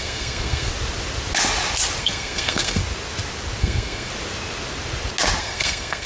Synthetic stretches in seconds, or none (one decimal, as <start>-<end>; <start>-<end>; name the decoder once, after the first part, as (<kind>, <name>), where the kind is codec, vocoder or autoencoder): 0.0-0.7 (codec, SNAC); 2.0-2.8; 3.6-4.1; 5.4-6.1